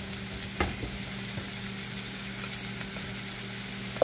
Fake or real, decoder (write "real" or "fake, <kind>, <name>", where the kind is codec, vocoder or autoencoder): real